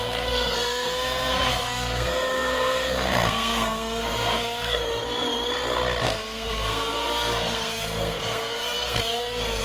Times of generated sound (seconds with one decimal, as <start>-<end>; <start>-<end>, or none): 0.0-4.9; 6.0-9.6